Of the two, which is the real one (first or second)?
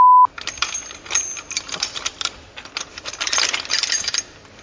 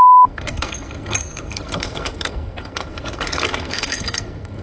first